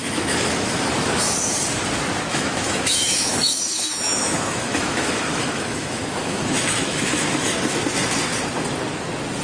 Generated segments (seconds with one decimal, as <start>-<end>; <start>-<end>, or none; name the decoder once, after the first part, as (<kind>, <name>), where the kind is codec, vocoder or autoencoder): 0.0-0.9 (autoencoder, DAC-VAE); 2.3-7.5